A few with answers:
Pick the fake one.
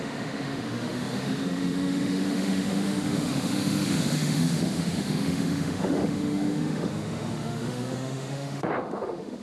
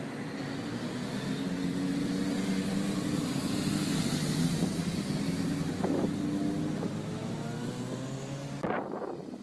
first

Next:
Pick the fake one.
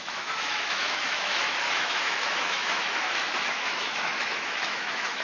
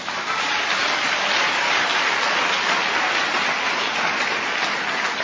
first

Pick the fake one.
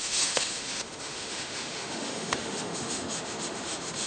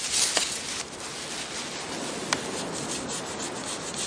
first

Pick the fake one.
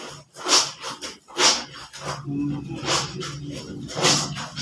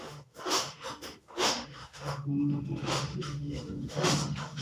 second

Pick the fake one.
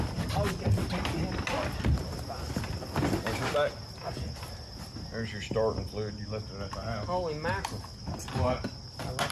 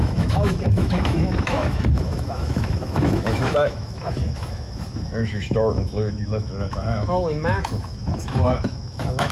second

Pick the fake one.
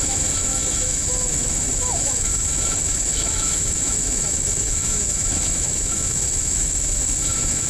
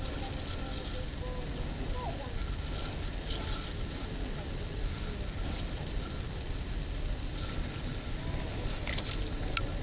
first